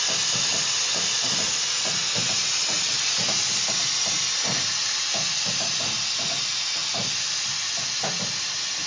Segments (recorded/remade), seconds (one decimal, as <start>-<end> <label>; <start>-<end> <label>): 0.0-6.8 recorded; 6.8-7.5 remade; 7.5-8.9 recorded